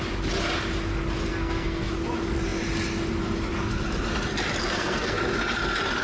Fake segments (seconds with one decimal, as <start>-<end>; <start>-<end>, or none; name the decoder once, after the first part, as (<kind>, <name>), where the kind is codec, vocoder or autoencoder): 1.3-1.9 (codec, SNAC); 4.6-5.2